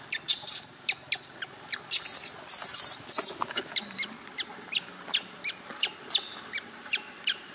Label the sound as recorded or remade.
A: recorded